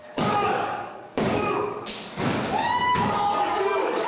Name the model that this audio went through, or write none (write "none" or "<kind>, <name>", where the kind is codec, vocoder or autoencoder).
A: codec, DAC